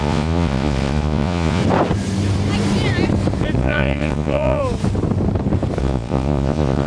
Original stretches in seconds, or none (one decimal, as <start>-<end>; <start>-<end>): 1.6-3.6; 4.6-5.8